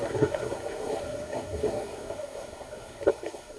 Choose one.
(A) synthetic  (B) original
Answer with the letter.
A